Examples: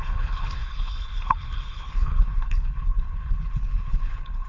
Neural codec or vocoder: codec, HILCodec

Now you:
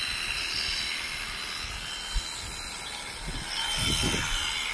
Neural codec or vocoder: none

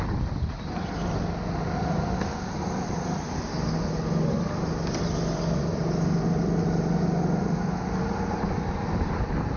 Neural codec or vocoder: none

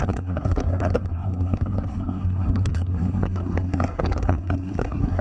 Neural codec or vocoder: codec, SNAC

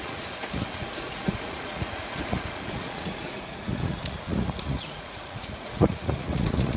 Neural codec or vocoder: vocoder, Vocos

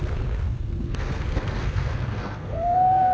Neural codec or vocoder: codec, SNAC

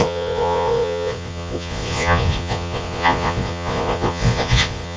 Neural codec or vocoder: vocoder, Vocos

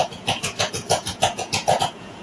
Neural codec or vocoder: vocoder, Vocos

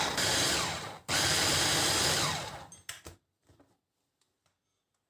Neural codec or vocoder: none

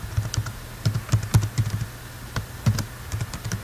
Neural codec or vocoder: none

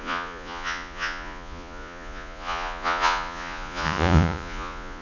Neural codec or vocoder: vocoder, Vocos